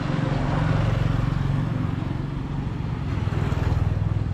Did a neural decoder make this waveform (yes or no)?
no